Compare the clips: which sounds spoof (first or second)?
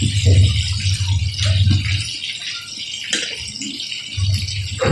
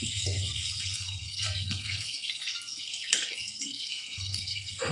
second